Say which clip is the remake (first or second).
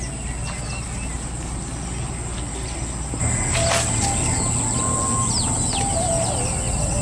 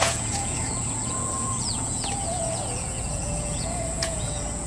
second